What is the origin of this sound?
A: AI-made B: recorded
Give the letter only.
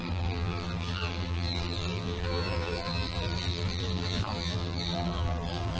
A